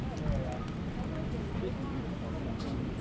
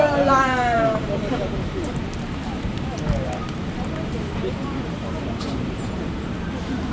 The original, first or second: first